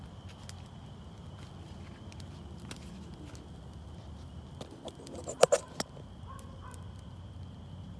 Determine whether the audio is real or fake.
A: real